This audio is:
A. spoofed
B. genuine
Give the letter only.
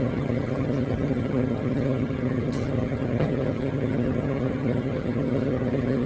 A